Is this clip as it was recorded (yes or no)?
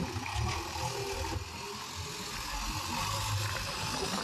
yes